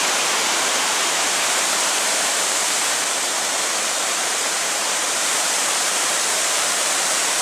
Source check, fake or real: fake